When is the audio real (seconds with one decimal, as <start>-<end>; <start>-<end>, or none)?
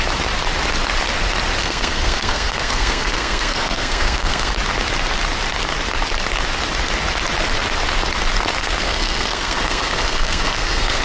0.0-1.6; 4.5-8.6